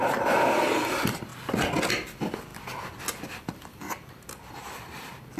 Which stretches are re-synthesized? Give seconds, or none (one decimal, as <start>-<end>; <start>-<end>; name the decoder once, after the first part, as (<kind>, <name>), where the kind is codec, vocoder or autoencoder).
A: 0.0-1.3 (vocoder, BigVGAN v2); 1.9-5.4